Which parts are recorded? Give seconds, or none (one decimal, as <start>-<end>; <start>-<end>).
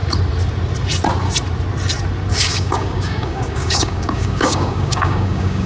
0.0-2.3